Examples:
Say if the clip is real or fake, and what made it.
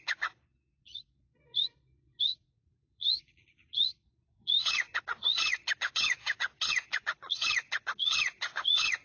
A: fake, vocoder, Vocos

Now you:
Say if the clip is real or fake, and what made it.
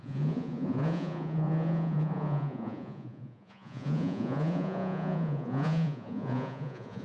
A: fake, vocoder, Vocos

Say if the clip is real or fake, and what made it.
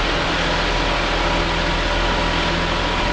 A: real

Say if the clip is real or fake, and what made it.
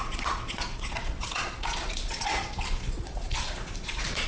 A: fake, vocoder, Vocos